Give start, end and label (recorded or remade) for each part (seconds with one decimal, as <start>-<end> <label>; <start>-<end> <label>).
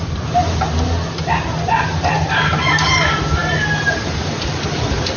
0.0-5.2 recorded